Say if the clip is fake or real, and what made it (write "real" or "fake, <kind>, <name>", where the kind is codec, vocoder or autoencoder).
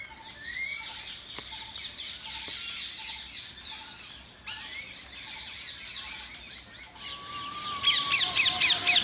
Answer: real